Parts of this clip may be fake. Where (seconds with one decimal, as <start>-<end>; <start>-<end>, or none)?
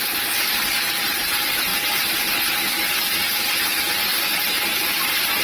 none